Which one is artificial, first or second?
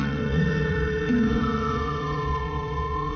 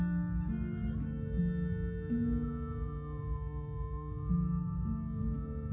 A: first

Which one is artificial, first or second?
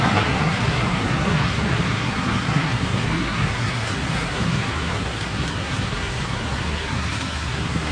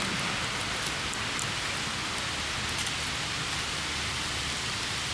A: first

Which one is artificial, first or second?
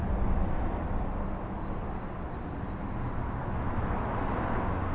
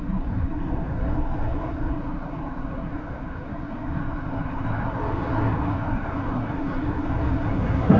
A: second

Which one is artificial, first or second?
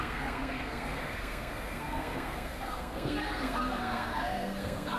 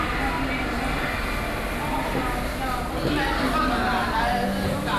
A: first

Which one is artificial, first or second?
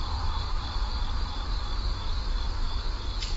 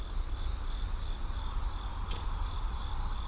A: first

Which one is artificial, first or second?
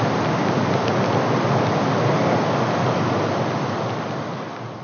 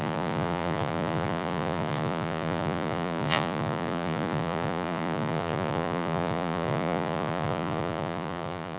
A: second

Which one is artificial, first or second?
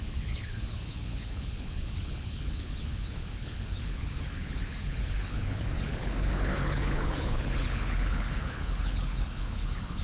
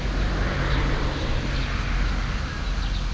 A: first